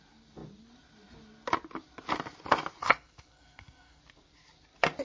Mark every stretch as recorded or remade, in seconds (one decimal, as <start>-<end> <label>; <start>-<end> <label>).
0.0-2.8 recorded; 2.8-4.0 remade; 4.0-5.0 recorded